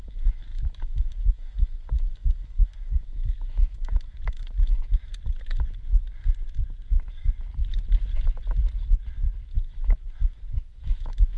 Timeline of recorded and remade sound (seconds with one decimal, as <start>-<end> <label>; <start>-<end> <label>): 0.0-5.1 remade; 5.1-9.6 recorded; 9.6-11.4 remade